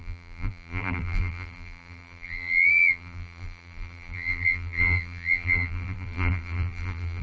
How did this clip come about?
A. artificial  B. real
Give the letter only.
A